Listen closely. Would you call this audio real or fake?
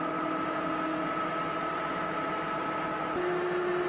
real